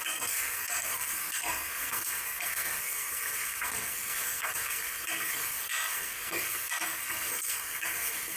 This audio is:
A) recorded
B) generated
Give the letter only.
B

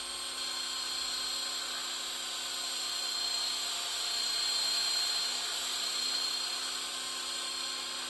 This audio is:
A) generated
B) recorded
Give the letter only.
B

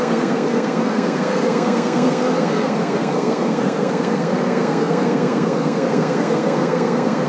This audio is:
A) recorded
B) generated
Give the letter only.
B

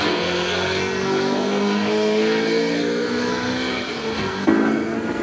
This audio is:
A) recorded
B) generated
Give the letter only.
B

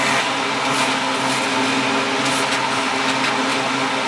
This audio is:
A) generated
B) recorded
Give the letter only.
B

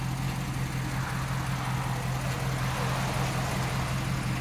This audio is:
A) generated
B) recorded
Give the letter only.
B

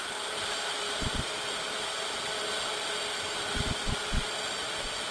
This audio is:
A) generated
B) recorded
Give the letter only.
B